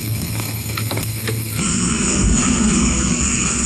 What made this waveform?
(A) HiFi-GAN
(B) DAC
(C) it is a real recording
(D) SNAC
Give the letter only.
D